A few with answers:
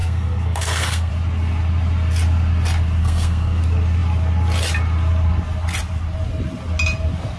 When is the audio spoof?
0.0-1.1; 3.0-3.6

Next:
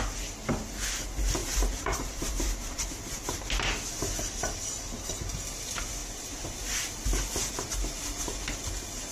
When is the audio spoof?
1.4-3.4

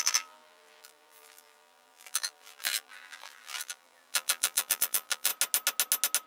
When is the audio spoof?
0.0-5.3

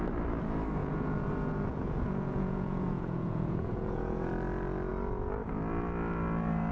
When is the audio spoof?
0.8-4.3

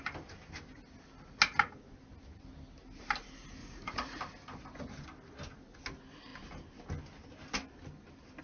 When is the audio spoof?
3.6-4.2

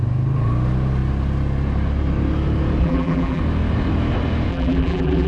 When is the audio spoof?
2.8-3.4; 4.5-5.3